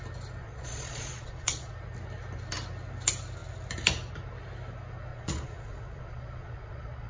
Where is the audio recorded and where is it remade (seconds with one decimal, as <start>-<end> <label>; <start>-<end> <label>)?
0.0-0.4 recorded; 0.4-1.7 remade; 1.7-5.1 recorded; 5.1-7.1 remade